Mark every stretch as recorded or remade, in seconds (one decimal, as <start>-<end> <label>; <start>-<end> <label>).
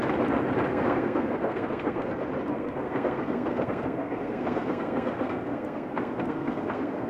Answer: 0.0-0.7 recorded; 0.7-2.1 remade; 2.1-2.5 recorded; 2.5-7.1 remade